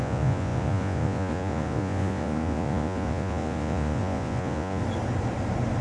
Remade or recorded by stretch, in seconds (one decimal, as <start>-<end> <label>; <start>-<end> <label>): 0.0-4.8 remade; 4.8-5.8 recorded